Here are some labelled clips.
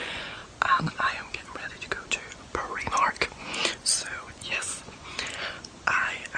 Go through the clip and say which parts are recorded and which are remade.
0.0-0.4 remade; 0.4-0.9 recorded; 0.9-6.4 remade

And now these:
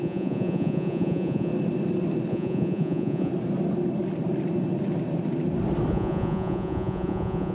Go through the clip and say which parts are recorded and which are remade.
0.0-1.5 remade; 1.5-2.3 recorded; 2.3-3.3 remade; 3.3-5.9 recorded; 5.9-7.5 remade

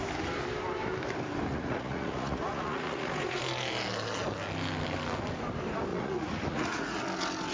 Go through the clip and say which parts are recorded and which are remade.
0.0-1.5 recorded; 1.5-3.4 remade; 3.4-5.9 recorded; 5.9-7.0 remade; 7.0-7.5 recorded

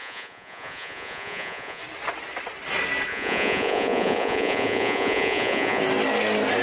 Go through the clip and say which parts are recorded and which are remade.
0.0-1.8 remade; 1.8-3.1 recorded; 3.1-5.8 remade; 5.8-6.6 recorded

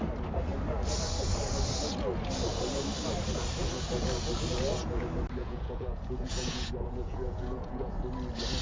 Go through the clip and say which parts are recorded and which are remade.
0.0-5.4 recorded; 5.4-7.9 remade; 7.9-8.6 recorded

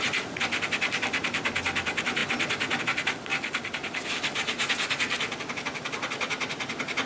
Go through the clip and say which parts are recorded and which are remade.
0.0-7.1 recorded

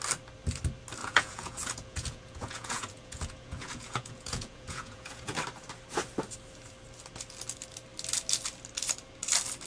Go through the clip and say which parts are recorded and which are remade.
0.0-1.0 recorded; 1.0-5.4 remade; 5.4-9.7 recorded

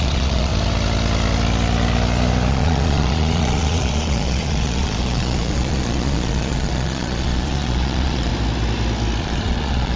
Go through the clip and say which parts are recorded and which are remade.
0.0-0.5 remade; 0.5-2.5 recorded; 2.5-8.3 remade; 8.3-9.2 recorded; 9.2-10.0 remade